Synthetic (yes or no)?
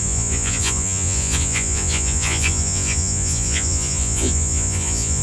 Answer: yes